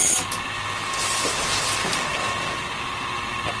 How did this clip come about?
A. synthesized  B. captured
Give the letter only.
B